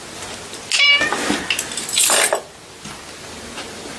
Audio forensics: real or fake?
real